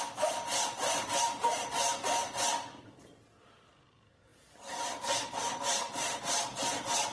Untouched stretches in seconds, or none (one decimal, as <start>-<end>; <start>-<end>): 0.0-7.1